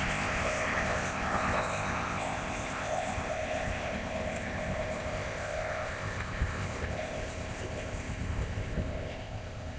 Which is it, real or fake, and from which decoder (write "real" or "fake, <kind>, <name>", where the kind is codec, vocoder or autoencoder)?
fake, codec, ZipCodec